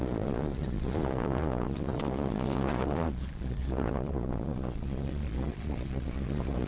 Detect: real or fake fake